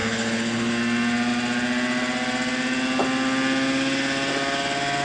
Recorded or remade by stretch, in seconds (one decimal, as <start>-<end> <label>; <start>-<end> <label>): 0.0-0.7 remade; 0.7-5.0 recorded

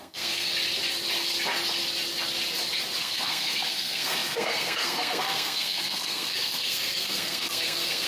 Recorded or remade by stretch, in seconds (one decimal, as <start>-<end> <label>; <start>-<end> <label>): 0.0-0.5 remade; 0.5-3.0 recorded; 3.0-8.1 remade

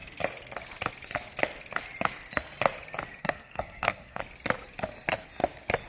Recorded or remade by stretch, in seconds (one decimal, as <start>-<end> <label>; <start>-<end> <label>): 0.0-3.2 recorded; 3.2-4.2 remade; 4.2-5.9 recorded

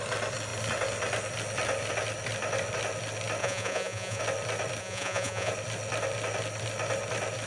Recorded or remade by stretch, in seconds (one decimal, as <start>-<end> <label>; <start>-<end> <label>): 0.0-3.4 recorded; 3.4-4.2 remade; 4.2-4.8 recorded; 4.8-5.5 remade; 5.5-7.5 recorded